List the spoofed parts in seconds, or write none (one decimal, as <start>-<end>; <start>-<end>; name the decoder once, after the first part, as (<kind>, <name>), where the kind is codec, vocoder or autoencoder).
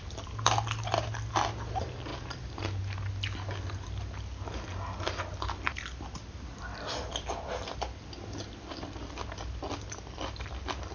none